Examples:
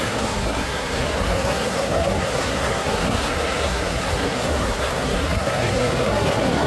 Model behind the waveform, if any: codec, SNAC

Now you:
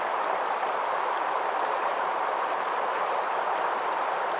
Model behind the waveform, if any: none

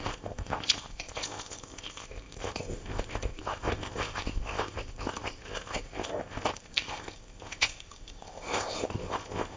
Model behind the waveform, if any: codec, ZipCodec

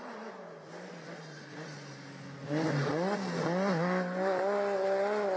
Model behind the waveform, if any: none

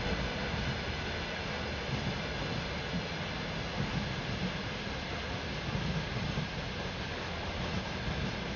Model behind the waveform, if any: none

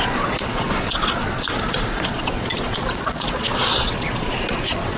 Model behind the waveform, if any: vocoder, Vocos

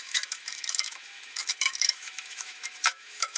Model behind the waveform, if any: autoencoder, DAC-VAE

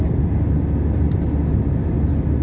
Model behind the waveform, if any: none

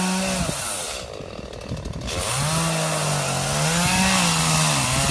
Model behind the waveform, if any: none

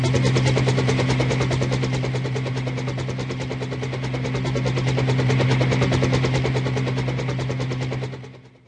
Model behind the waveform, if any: none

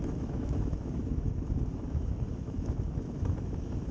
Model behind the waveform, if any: autoencoder, DAC-VAE